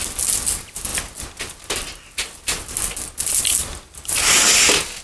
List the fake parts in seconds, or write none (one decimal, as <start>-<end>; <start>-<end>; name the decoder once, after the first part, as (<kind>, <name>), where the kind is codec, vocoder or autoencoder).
none